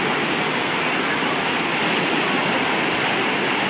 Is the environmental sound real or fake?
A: real